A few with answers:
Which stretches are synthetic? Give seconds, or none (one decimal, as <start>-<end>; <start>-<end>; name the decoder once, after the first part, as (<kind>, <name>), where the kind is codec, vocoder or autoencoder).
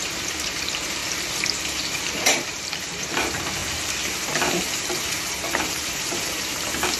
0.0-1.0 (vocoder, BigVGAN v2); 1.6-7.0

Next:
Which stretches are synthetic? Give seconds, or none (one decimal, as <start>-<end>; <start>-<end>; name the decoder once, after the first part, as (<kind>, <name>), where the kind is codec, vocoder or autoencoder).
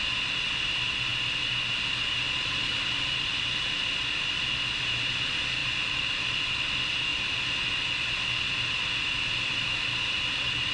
5.6-6.4 (vocoder, BigVGAN v2)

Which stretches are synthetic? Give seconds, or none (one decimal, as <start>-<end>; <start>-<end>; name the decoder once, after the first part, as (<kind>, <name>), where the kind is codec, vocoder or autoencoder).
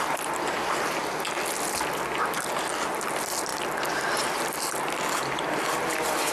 0.0-1.0 (vocoder, BigVGAN v2); 2.9-6.3